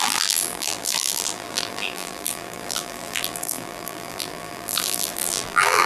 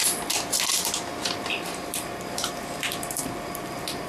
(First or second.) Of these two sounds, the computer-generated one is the first